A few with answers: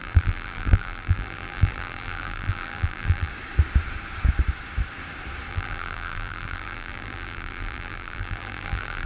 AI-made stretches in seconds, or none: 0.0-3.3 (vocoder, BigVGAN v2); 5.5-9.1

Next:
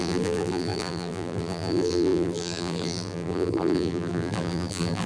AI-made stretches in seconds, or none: 0.0-5.1 (vocoder, BigVGAN v2)

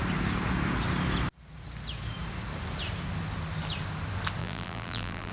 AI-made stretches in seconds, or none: 4.4-5.3 (vocoder, BigVGAN v2)